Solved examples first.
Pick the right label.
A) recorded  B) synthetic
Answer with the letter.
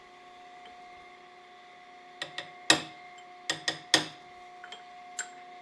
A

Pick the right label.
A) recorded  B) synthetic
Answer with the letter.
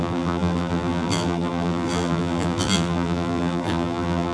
B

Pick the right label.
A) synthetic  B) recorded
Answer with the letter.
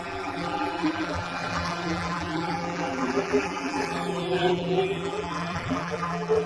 A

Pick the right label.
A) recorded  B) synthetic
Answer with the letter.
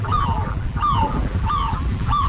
B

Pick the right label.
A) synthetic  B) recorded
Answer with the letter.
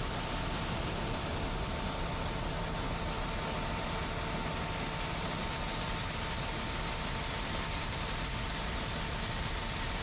B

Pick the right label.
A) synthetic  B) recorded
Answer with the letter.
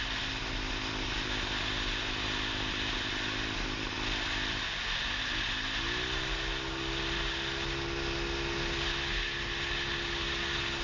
B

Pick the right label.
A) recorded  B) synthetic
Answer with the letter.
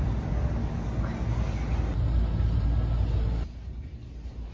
A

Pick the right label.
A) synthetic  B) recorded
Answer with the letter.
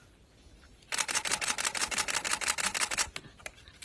A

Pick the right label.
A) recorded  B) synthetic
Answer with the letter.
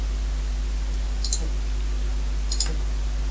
A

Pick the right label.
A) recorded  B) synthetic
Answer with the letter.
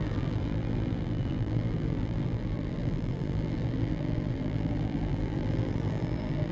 B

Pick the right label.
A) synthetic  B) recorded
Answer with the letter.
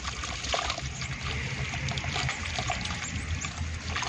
B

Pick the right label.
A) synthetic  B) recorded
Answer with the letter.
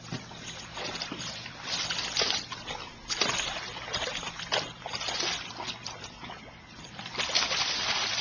A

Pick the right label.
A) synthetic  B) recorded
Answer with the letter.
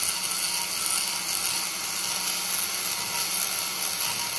B